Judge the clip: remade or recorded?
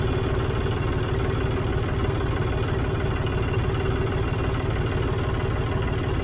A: recorded